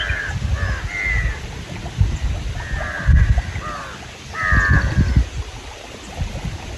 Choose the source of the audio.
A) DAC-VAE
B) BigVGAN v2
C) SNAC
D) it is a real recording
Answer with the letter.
D